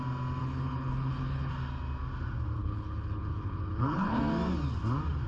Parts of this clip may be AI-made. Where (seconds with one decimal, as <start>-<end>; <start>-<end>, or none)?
0.4-1.5; 2.6-4.2

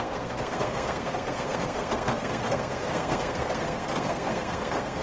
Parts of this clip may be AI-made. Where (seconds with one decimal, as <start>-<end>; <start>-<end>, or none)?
0.0-5.0

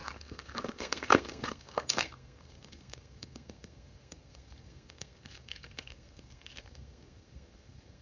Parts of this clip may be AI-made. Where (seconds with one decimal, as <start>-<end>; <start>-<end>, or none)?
0.0-8.0